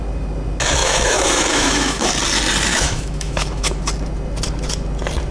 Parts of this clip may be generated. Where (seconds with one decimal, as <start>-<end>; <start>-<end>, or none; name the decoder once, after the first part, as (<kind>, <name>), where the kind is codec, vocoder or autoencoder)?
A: 0.8-2.1 (autoencoder, DAC-VAE); 2.7-3.8